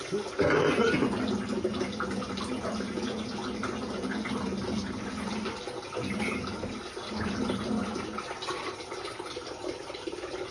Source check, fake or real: real